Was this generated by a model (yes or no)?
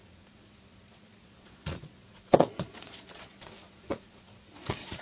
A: yes